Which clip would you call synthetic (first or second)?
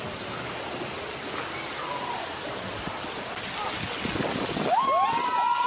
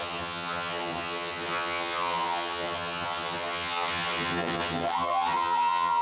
second